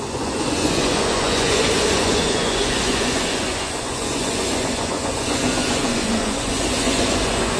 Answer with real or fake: fake